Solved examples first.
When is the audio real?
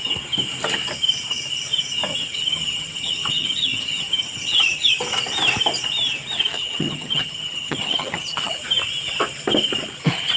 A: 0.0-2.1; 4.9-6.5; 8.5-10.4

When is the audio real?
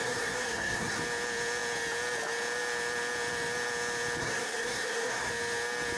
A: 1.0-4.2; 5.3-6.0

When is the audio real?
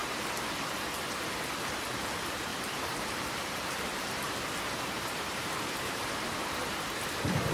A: 0.0-1.9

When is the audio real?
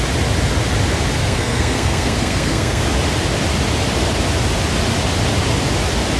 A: 0.0-1.2; 2.8-6.2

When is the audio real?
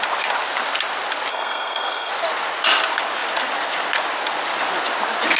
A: 0.0-1.3; 2.1-5.4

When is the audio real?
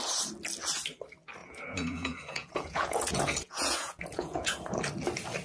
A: 0.0-1.4; 4.6-5.4